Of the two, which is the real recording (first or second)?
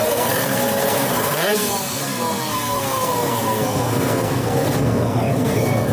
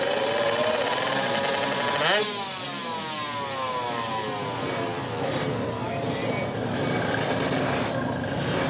second